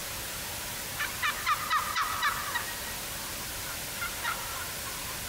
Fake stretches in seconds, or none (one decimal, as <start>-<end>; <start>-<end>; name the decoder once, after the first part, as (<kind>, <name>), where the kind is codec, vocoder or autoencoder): none